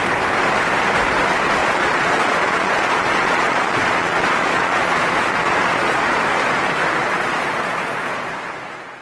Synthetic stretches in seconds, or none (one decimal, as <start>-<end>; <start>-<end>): 1.6-6.2; 7.0-8.3